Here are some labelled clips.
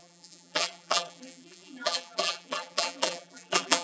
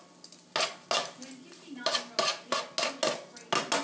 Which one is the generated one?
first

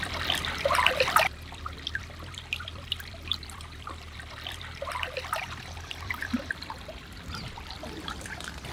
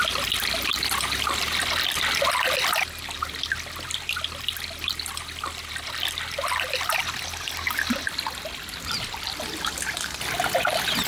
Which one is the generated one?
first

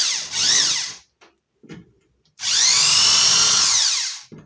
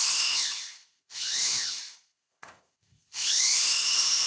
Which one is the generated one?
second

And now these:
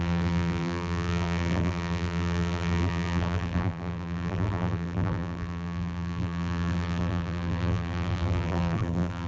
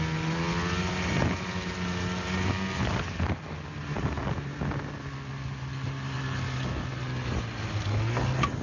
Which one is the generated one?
first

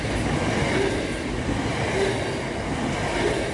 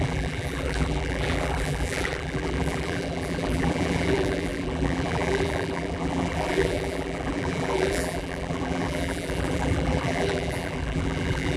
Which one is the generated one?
second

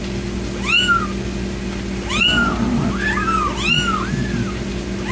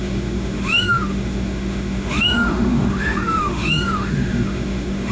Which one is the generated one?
second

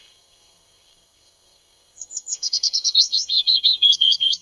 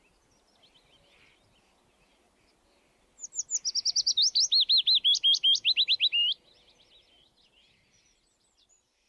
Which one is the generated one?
first